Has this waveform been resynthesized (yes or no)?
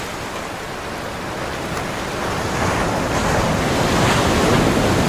no